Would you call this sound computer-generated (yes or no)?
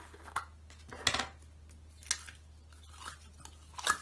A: no